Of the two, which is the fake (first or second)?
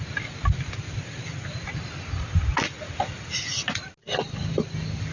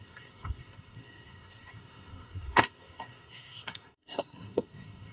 second